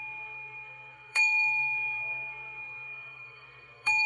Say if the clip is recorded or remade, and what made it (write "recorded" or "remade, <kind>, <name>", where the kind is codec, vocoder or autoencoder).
remade, codec, SNAC